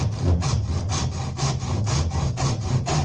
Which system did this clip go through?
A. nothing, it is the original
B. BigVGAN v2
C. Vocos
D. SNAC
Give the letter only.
A